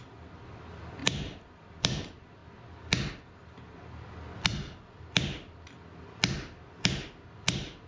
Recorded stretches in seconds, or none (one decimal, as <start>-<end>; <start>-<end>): 0.0-1.0; 2.0-4.5; 5.7-7.9